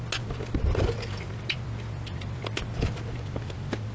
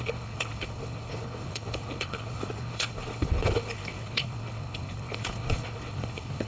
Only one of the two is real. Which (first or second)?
first